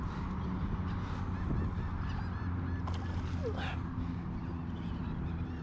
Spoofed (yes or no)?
no